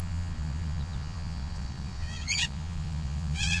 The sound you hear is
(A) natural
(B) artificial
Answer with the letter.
B